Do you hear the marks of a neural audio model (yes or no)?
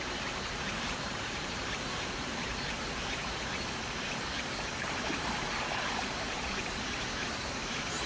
yes